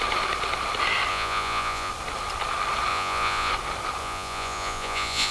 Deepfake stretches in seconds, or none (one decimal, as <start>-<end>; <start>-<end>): 1.1-1.9; 2.9-3.5; 4.0-5.3